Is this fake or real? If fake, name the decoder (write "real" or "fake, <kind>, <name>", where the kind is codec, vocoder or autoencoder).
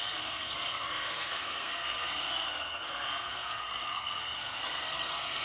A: fake, codec, SNAC